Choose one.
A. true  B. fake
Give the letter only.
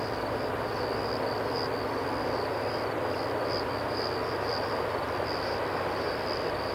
A